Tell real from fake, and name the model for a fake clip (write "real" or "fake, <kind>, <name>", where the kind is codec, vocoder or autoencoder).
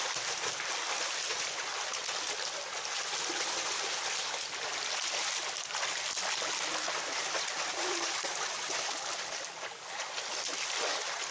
real